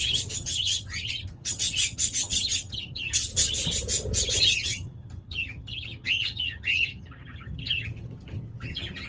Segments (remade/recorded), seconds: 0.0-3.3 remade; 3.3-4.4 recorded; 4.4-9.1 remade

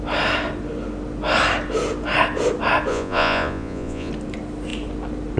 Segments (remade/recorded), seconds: 0.0-2.9 recorded; 2.9-4.1 remade; 4.1-5.4 recorded

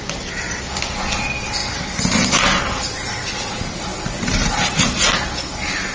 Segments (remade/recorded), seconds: 0.0-5.9 recorded